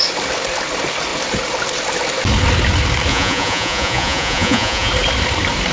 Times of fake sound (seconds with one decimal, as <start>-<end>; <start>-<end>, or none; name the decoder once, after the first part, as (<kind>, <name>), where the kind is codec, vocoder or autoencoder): 3.1-4.9 (vocoder, Vocos)